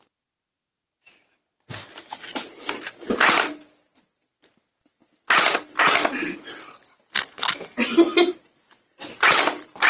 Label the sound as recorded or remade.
recorded